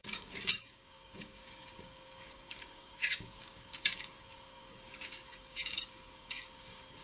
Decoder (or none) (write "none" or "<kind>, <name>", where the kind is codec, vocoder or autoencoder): codec, DAC